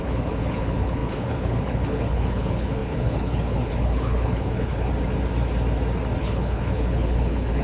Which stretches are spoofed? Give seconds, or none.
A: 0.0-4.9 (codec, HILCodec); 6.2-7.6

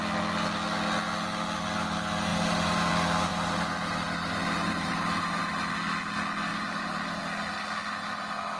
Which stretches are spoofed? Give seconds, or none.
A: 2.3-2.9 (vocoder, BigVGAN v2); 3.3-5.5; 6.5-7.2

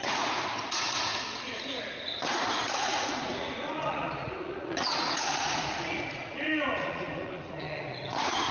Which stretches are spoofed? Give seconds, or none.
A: 0.0-8.5 (vocoder, Vocos)

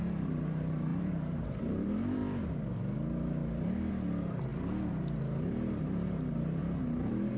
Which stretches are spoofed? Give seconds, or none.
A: 0.0-2.2 (vocoder, BigVGAN v2); 3.9-4.5; 5.8-7.4